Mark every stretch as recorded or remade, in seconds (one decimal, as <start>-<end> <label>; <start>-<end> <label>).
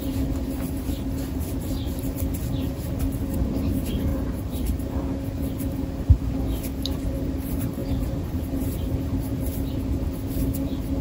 0.0-4.1 recorded; 4.1-4.8 remade; 4.8-7.8 recorded; 7.8-9.4 remade; 9.4-11.0 recorded